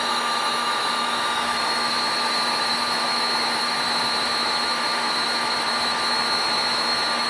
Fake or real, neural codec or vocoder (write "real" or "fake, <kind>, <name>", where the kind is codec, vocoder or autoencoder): fake, autoencoder, DAC-VAE